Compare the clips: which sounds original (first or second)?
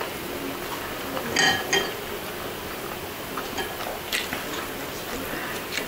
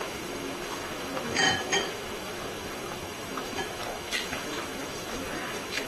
first